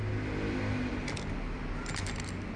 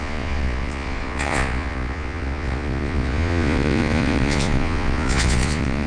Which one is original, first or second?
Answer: first